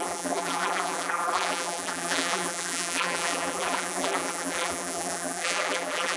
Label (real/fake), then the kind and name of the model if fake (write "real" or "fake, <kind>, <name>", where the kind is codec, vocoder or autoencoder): fake, vocoder, BigVGAN v2